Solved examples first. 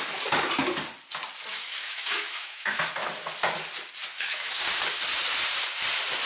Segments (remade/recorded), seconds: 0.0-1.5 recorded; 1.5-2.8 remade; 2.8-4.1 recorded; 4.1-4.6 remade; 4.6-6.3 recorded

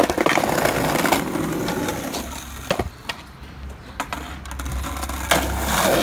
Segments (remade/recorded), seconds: 0.0-6.0 recorded

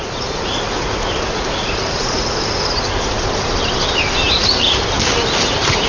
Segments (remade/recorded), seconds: 0.0-3.5 remade; 3.5-5.9 recorded

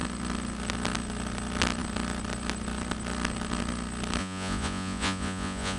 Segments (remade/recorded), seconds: 0.0-4.2 recorded; 4.2-5.8 remade

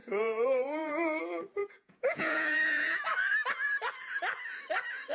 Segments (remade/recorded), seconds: 0.0-1.2 remade; 1.2-1.6 recorded; 1.6-3.0 remade; 3.0-5.1 recorded